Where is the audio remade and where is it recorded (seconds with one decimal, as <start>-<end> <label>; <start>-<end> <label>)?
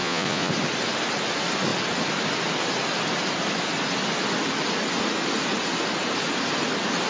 0.0-0.5 remade; 0.5-7.1 recorded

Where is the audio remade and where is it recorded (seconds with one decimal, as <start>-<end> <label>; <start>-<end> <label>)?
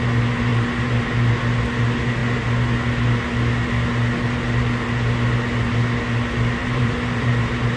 0.0-0.5 recorded; 0.5-1.3 remade; 1.3-6.6 recorded; 6.6-7.8 remade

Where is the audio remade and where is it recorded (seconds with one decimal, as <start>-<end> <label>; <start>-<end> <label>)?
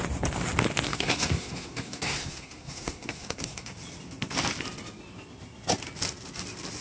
0.0-0.9 recorded; 0.9-3.7 remade; 3.7-6.8 recorded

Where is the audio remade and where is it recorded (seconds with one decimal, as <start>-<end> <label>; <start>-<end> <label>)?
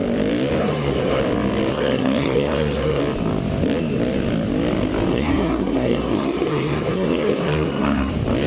0.0-0.6 recorded; 0.6-1.2 remade; 1.2-1.7 recorded; 1.7-3.0 remade; 3.0-5.1 recorded; 5.1-8.1 remade; 8.1-8.5 recorded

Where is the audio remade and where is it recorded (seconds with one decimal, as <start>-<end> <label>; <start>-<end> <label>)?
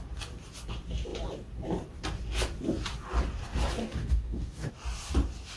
0.0-3.8 recorded; 3.8-4.7 remade; 4.7-5.6 recorded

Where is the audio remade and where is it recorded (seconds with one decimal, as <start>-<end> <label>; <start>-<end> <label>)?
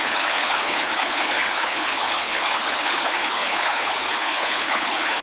0.0-5.2 remade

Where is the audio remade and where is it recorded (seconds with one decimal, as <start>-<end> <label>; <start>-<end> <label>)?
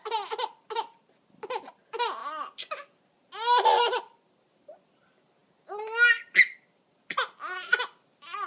0.0-8.5 recorded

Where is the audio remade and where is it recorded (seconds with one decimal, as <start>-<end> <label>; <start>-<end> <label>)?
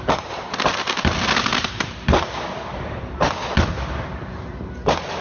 0.0-1.5 recorded; 1.5-3.3 remade; 3.3-5.2 recorded